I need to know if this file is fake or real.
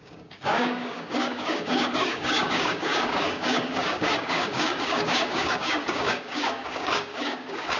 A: fake